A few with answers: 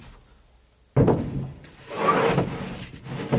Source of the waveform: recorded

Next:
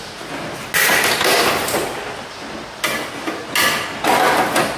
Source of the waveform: recorded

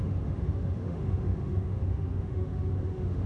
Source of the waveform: remade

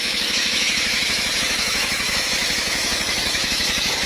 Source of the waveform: remade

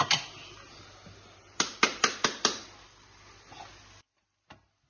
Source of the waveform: recorded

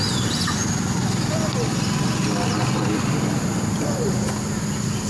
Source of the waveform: recorded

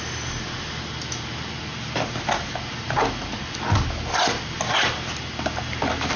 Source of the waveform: recorded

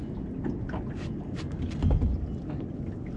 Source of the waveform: recorded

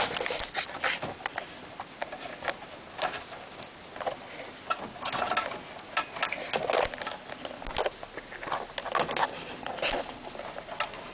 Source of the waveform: recorded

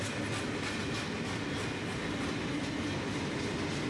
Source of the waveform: recorded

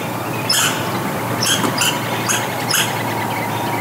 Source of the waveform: recorded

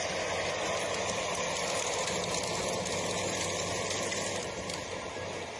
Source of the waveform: recorded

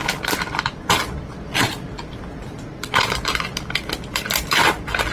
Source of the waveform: recorded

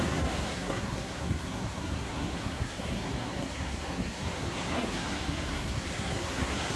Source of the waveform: remade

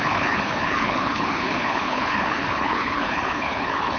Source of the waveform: remade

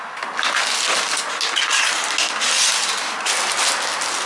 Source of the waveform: recorded